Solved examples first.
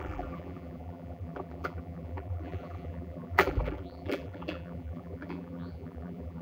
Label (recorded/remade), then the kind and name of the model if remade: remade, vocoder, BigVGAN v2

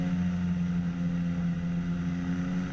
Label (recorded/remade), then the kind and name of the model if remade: recorded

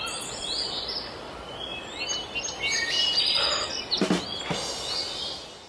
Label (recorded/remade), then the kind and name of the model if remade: recorded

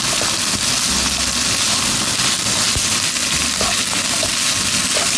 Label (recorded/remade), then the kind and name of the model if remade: recorded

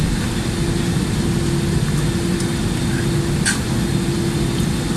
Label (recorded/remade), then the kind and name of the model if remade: recorded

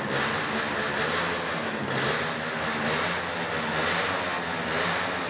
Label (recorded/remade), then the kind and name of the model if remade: recorded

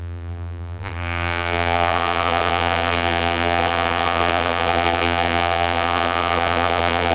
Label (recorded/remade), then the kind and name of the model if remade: remade, vocoder, BigVGAN v2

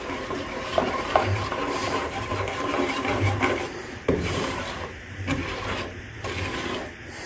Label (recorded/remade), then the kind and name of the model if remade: remade, vocoder, BigVGAN v2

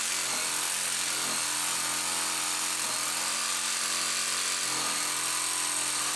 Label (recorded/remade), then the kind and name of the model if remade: recorded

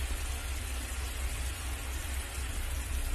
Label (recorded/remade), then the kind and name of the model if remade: recorded